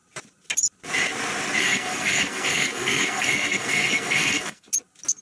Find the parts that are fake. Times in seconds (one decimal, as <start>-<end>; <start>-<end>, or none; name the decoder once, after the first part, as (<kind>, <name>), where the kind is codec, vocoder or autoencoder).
1.6-4.7 (codec, SNAC)